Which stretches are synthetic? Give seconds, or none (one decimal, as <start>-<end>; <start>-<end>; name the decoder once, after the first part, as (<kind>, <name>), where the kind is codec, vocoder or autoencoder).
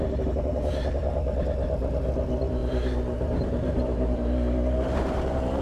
2.6-5.6 (vocoder, BigVGAN v2)